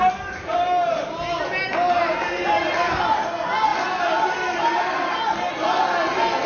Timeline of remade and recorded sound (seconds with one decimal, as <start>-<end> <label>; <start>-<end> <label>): 0.0-6.5 recorded